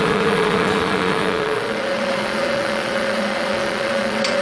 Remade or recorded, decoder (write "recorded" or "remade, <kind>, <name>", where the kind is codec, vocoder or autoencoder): remade, vocoder, Vocos